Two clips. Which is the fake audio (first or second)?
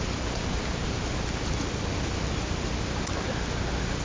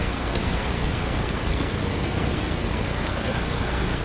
second